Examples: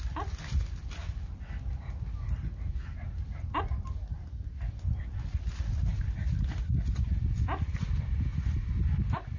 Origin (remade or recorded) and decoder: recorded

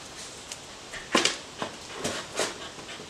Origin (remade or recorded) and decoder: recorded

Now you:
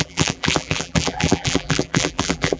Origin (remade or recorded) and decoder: remade, vocoder, BigVGAN v2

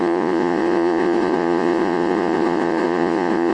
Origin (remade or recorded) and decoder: remade, vocoder, Vocos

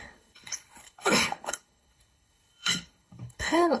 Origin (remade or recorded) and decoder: remade, codec, HILCodec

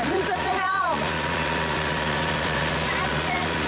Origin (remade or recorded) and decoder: remade, vocoder, Vocos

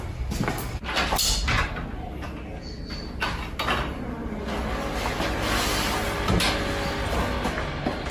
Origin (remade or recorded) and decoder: recorded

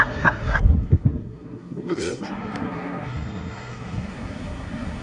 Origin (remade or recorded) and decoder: remade, codec, SNAC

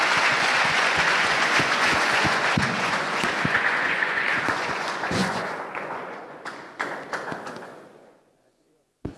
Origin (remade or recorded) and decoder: remade, vocoder, Vocos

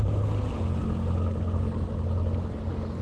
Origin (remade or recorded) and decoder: recorded